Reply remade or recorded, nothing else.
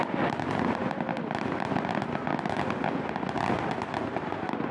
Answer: recorded